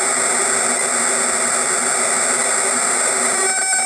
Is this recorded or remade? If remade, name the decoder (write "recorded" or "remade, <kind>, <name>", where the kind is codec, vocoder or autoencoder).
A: recorded